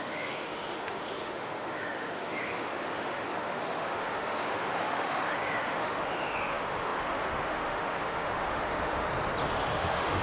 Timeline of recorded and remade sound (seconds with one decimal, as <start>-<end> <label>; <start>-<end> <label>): 0.0-9.1 remade; 9.1-9.7 recorded; 9.7-10.2 remade